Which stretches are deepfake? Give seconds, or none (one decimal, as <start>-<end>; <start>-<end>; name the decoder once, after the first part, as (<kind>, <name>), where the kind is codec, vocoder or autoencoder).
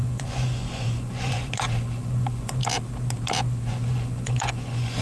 0.0-2.6 (vocoder, Vocos); 3.7-5.0